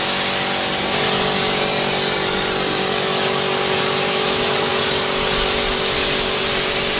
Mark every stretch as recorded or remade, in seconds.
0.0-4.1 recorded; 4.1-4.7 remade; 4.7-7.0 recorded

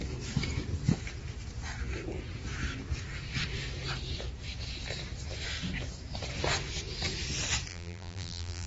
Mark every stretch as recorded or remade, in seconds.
0.0-7.7 recorded; 7.7-8.7 remade

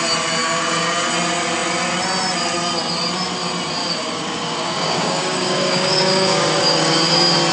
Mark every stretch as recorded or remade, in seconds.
0.0-0.4 recorded; 0.4-1.1 remade; 1.1-3.8 recorded; 3.8-7.1 remade; 7.1-7.5 recorded

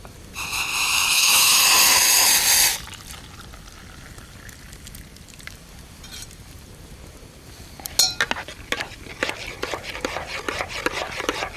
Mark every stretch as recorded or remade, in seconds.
0.0-0.7 recorded; 0.7-1.6 remade; 1.6-11.6 recorded

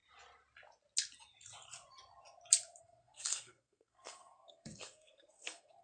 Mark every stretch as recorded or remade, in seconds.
0.0-2.8 recorded; 2.8-5.8 remade